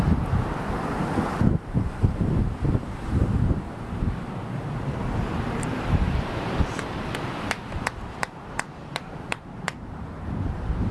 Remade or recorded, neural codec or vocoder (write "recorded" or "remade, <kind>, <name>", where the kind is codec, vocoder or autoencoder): remade, vocoder, BigVGAN v2